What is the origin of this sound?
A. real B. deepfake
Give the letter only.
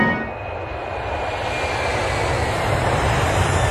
A